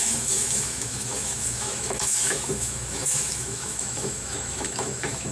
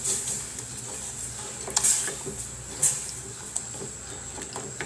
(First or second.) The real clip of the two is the second